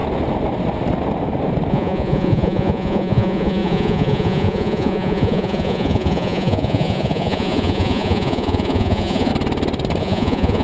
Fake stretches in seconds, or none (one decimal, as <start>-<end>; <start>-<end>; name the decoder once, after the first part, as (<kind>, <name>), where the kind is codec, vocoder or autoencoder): 1.7-9.3 (vocoder, Vocos); 10.0-10.6